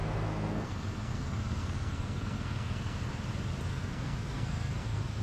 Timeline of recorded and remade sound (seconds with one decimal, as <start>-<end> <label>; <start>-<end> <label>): 0.0-3.1 remade; 3.1-3.7 recorded; 3.7-5.2 remade